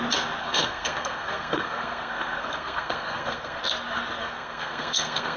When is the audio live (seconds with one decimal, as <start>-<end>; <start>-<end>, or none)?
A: 0.0-0.4; 3.6-4.2